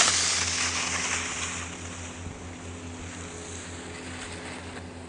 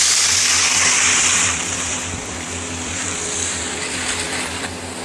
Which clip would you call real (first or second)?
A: first